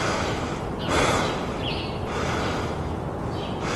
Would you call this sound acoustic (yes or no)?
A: yes